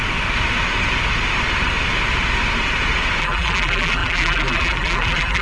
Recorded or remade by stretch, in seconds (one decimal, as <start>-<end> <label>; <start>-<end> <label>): 0.0-3.2 recorded; 3.2-5.4 remade